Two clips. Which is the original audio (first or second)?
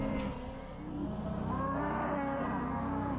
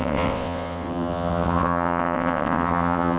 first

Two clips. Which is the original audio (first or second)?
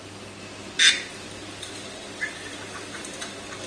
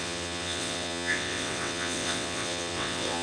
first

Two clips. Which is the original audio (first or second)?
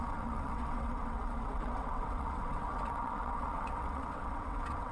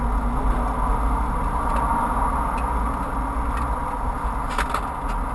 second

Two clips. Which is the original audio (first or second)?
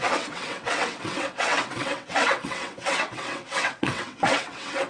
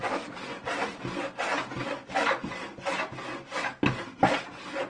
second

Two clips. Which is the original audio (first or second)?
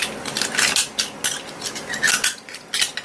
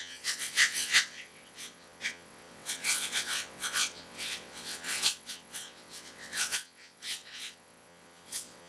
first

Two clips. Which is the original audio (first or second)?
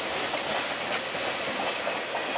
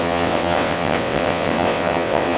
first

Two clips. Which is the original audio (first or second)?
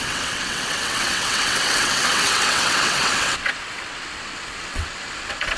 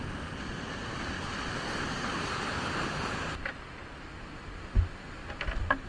second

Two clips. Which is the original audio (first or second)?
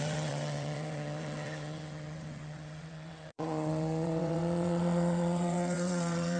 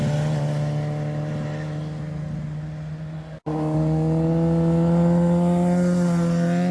second